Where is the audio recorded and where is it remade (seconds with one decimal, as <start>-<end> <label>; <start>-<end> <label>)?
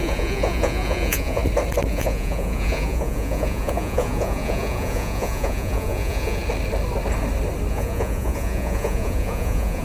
0.0-1.4 remade; 1.4-1.9 recorded; 1.9-6.4 remade; 6.4-7.7 recorded; 7.7-9.8 remade